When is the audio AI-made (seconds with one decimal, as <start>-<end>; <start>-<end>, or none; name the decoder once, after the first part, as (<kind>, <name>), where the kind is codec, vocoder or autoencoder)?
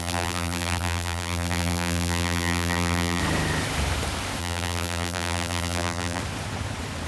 0.0-3.2 (vocoder, BigVGAN v2); 4.4-6.2